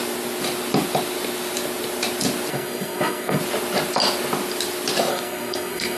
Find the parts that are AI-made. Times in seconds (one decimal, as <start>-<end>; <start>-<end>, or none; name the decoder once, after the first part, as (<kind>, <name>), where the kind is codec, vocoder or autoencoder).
2.5-3.4 (codec, SNAC); 5.1-6.0